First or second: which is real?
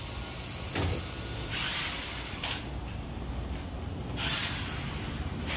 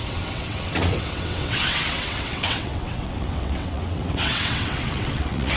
first